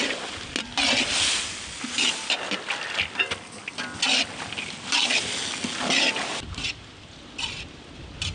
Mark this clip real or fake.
real